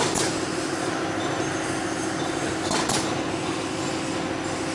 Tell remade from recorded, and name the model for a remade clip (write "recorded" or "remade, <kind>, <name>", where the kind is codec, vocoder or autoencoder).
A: recorded